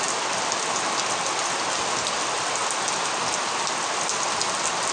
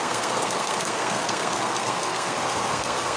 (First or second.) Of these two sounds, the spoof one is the second